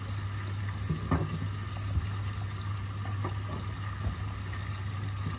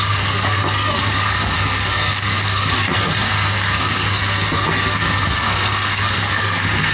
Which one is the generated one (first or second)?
second